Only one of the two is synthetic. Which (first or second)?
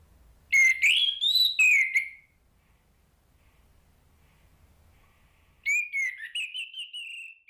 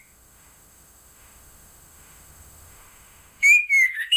second